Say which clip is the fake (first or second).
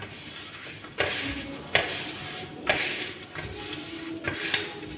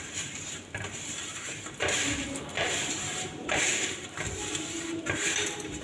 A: second